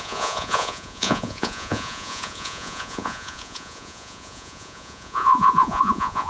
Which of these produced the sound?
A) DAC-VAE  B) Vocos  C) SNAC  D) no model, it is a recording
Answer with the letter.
B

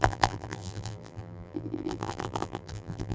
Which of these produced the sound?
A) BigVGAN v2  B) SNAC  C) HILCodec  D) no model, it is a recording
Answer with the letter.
A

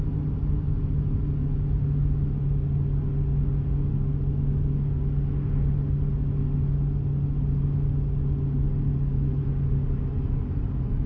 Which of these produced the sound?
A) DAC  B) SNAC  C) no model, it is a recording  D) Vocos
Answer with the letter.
C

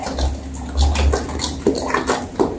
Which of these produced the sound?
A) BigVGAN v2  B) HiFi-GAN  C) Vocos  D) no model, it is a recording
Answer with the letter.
D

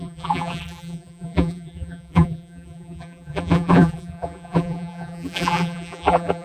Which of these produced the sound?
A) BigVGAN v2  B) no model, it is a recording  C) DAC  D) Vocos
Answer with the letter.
A